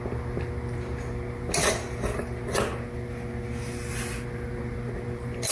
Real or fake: real